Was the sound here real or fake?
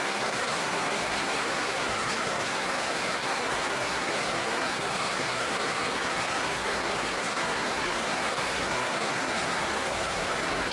fake